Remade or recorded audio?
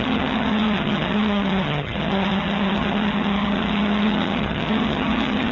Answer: remade